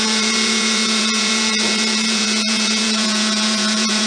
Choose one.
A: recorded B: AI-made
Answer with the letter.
B